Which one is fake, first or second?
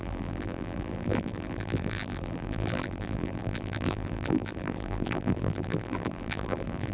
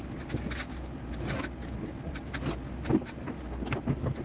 first